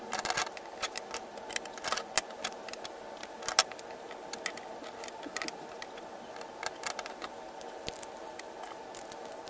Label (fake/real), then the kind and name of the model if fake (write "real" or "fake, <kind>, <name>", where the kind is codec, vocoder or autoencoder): real